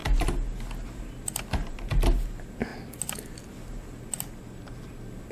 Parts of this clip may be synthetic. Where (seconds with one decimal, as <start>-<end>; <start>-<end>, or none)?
none